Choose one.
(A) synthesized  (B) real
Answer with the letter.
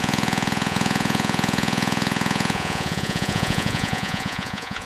A